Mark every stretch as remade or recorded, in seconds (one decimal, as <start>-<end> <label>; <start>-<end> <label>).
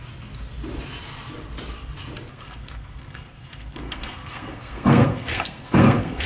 0.0-2.3 recorded; 2.3-6.3 remade